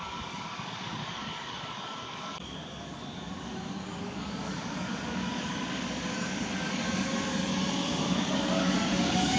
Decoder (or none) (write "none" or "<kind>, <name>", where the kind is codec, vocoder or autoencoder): codec, DAC